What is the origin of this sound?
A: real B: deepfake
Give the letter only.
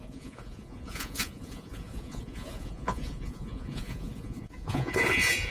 B